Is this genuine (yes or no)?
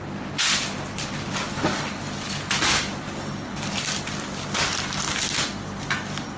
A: yes